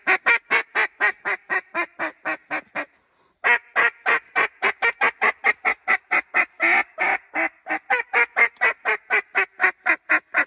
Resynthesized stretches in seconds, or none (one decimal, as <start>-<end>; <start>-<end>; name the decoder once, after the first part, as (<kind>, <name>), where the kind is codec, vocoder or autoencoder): none